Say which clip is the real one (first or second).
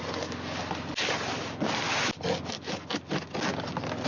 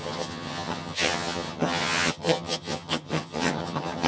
first